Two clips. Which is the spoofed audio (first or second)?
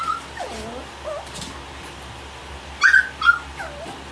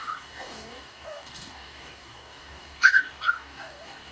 second